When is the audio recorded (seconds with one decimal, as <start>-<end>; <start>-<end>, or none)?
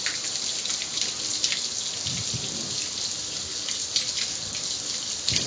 0.0-5.5